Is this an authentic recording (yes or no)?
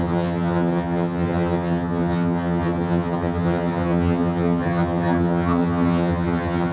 no